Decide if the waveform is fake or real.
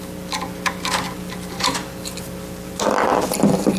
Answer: real